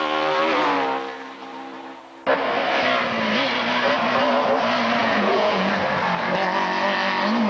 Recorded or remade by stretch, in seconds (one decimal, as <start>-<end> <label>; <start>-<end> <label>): 0.0-5.0 recorded; 5.0-5.7 remade; 5.7-7.5 recorded